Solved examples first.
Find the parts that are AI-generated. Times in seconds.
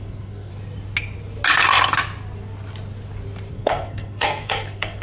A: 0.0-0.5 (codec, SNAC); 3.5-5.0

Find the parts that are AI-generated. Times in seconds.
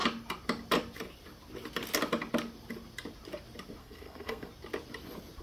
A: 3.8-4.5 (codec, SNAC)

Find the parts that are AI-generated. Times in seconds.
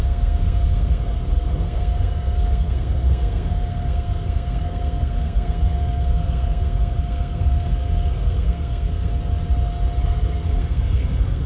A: 0.0-9.1 (codec, SNAC); 10.0-11.5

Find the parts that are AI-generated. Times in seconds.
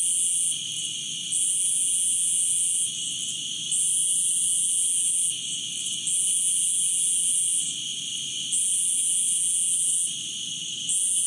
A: none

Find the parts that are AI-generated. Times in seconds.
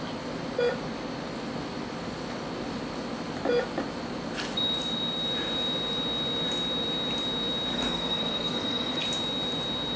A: 7.7-9.0 (codec, SNAC)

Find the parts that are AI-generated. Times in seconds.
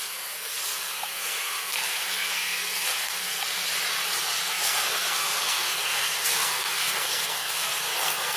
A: 0.0-3.6 (codec, SNAC); 4.4-8.4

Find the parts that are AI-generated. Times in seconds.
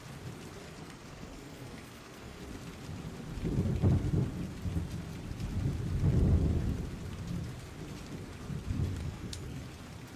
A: 0.6-2.4 (codec, SNAC); 9.0-9.6